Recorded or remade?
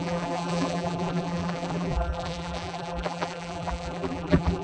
remade